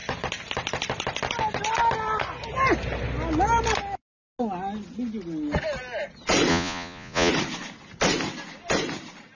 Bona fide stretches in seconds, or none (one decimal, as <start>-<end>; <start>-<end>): 0.0-6.5; 7.3-9.3